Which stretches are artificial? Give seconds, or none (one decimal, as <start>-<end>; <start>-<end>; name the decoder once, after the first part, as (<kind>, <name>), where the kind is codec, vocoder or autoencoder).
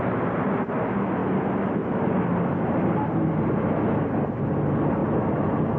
none